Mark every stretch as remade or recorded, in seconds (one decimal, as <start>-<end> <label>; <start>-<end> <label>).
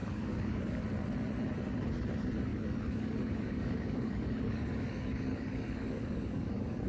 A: 0.0-0.8 remade; 0.8-2.5 recorded; 2.5-6.9 remade